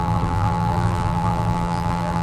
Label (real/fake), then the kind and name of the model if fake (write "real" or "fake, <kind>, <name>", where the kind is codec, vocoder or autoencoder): fake, vocoder, BigVGAN v2